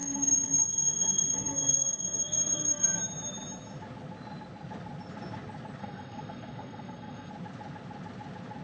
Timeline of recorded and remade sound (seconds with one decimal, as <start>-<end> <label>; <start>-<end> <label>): 0.0-3.0 remade; 3.0-5.8 recorded; 5.8-7.3 remade; 7.3-8.6 recorded